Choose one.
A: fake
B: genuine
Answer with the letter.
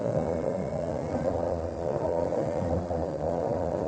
A